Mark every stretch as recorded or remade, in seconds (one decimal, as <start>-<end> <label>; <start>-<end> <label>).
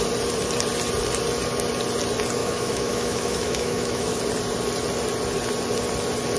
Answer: 0.0-2.4 recorded; 2.4-4.2 remade; 4.2-6.4 recorded